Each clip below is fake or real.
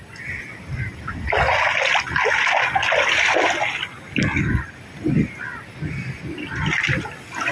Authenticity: real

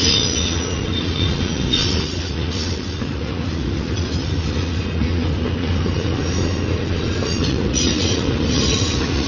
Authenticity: fake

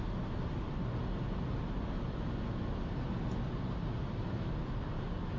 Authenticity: real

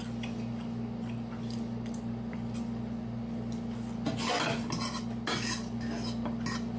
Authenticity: real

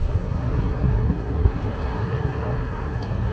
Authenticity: fake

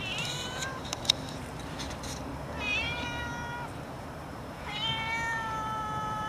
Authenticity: fake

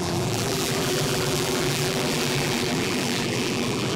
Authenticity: fake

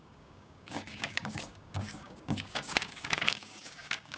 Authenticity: fake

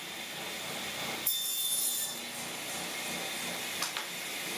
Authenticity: real